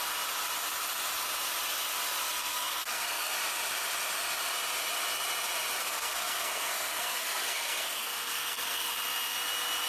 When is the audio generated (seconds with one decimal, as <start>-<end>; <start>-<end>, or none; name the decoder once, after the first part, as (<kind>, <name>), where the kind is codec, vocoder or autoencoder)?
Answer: 2.3-3.3 (codec, SNAC); 5.8-8.9